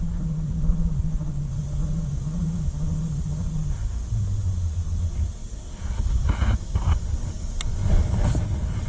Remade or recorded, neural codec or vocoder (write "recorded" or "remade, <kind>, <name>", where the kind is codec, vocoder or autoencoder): recorded